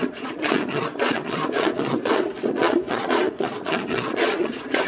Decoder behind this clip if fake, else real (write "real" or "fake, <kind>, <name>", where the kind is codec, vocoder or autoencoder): fake, vocoder, Vocos